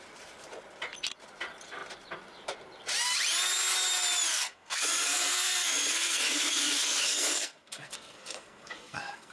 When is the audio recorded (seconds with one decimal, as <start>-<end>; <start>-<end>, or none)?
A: 0.0-4.3